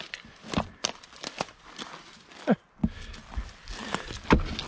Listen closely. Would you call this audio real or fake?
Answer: real